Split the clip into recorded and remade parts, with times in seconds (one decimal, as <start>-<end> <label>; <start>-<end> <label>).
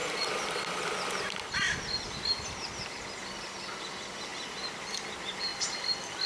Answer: 0.0-4.3 remade; 4.3-5.1 recorded; 5.1-6.3 remade